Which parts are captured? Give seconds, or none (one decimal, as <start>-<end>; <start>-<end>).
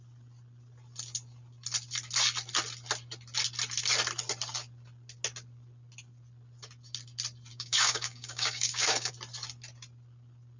0.0-7.5; 9.1-10.6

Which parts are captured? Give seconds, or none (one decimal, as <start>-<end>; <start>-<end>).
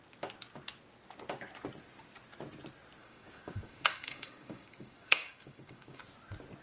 0.0-3.0; 6.0-6.6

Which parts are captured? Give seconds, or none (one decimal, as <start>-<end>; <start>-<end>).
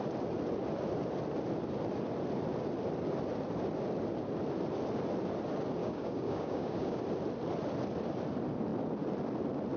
0.0-5.8; 7.0-9.8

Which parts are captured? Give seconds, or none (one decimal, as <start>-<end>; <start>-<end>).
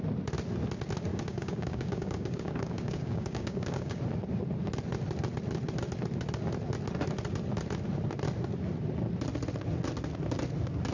0.0-1.1; 4.0-10.9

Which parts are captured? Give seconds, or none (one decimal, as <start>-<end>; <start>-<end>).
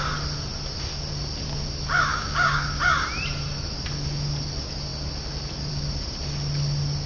0.0-2.1; 2.8-7.1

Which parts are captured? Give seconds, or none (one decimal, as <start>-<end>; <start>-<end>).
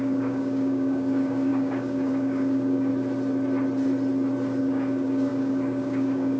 2.9-4.6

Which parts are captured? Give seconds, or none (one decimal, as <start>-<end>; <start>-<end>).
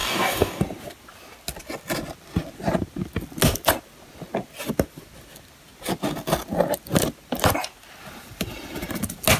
0.6-9.4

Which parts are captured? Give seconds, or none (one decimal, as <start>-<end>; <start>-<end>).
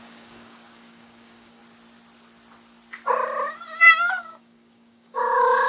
1.6-3.8